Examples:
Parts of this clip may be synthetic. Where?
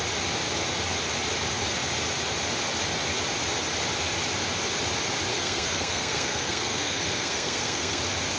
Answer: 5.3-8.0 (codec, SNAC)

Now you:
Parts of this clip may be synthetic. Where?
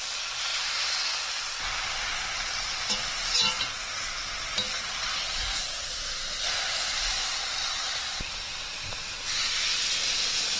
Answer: 4.7-5.3 (vocoder, WaveNeXt)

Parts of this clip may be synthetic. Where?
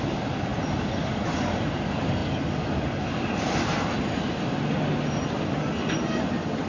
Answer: none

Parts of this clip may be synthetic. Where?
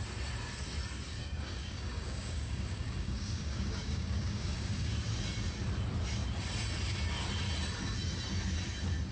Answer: 1.2-4.9 (codec, DAC)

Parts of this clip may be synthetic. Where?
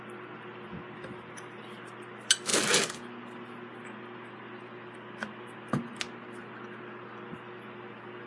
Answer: none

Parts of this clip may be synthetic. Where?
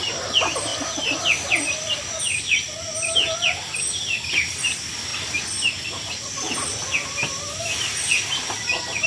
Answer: none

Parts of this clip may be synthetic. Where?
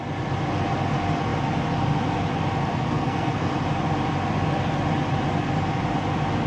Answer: 2.7-3.5 (codec, SNAC)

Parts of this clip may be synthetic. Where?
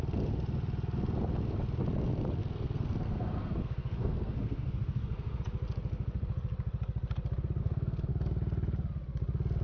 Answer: 2.4-5.4 (codec, SNAC); 7.6-8.1